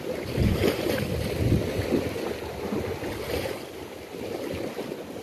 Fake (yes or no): no